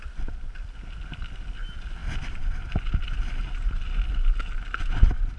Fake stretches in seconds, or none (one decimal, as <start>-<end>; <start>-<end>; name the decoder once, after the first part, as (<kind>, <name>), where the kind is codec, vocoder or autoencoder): none